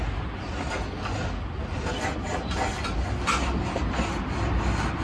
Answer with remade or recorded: recorded